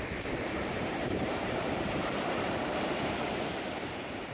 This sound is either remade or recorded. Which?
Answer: remade